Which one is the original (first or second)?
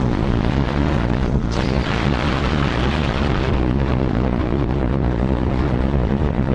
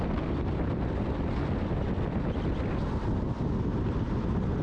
second